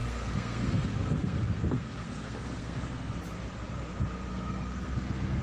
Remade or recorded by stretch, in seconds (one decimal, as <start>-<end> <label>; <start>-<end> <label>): 0.0-3.2 remade; 3.2-4.3 recorded; 4.3-5.4 remade